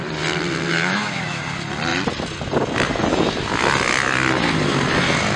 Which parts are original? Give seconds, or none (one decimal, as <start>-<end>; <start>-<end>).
0.0-0.7; 1.4-5.4